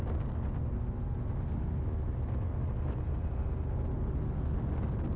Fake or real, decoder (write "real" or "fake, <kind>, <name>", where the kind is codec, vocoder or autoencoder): real